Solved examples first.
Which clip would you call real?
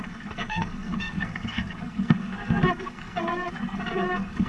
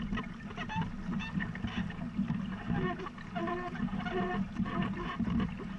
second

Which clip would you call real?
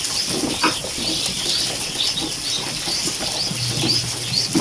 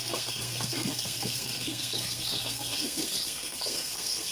first